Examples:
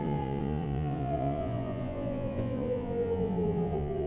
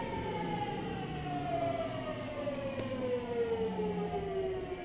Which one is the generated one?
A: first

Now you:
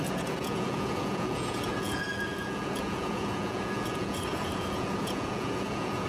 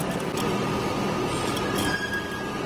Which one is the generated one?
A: first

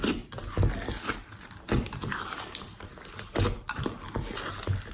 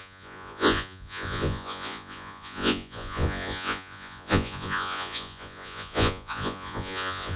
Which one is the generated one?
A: second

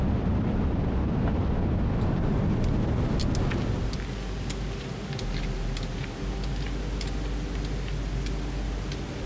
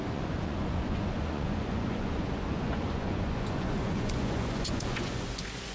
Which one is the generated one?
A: second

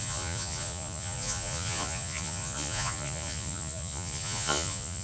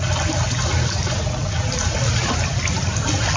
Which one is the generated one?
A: first